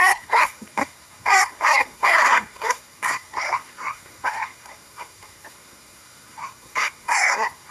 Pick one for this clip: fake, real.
fake